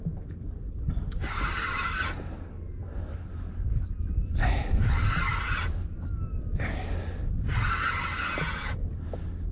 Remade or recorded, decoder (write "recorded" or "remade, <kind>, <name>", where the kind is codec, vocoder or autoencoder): recorded